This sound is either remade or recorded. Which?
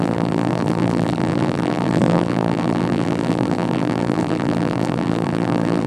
remade